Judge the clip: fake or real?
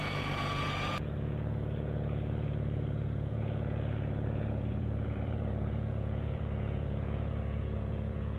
fake